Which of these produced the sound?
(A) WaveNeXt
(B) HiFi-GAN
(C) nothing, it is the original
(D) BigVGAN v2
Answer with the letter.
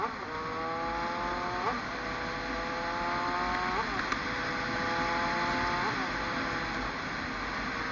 C